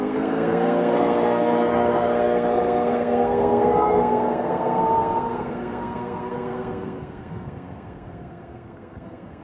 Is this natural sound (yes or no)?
no